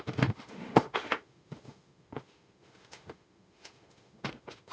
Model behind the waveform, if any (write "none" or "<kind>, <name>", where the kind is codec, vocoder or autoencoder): autoencoder, DAC-VAE